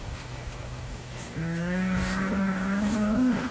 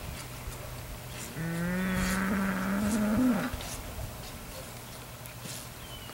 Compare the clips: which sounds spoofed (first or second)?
first